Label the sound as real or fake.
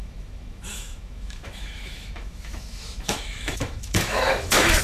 fake